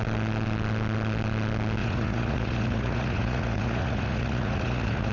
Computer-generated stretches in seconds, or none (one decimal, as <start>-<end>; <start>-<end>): 1.8-5.1